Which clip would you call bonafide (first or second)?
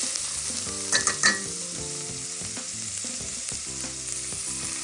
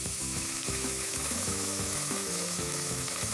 first